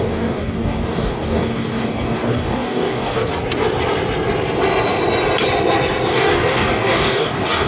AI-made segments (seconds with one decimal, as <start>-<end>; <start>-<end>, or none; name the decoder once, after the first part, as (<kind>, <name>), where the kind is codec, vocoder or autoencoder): 0.0-3.3 (codec, DAC); 6.1-7.7